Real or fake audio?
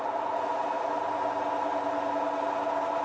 real